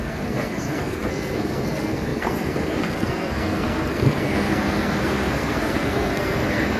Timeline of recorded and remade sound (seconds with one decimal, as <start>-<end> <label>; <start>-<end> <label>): 0.0-6.8 remade

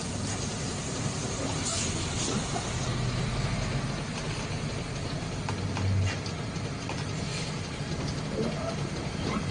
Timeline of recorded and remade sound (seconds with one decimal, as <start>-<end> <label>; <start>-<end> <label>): 0.0-7.3 recorded; 7.3-8.2 remade; 8.2-9.5 recorded

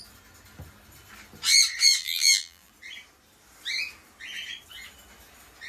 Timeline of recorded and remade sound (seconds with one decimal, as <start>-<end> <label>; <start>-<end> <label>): 0.0-2.0 recorded; 2.0-2.7 remade; 2.7-5.7 recorded

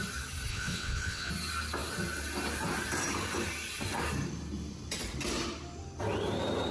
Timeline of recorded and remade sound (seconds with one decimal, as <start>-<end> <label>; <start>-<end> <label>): 0.0-0.5 recorded; 0.5-1.3 remade; 1.3-6.7 recorded

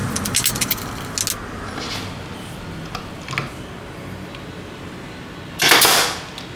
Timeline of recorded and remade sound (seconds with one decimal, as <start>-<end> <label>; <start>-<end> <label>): 0.0-6.6 recorded